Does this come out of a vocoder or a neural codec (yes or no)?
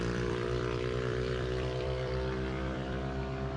yes